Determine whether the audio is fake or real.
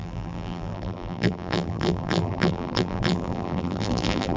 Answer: fake